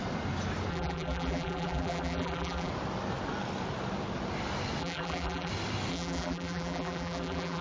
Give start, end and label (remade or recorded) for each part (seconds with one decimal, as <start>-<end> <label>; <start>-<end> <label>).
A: 0.0-0.7 recorded; 0.7-2.7 remade; 2.7-4.8 recorded; 4.8-5.5 remade; 5.5-5.9 recorded; 5.9-7.6 remade